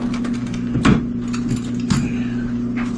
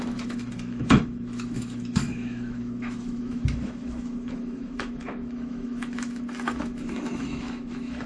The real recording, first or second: first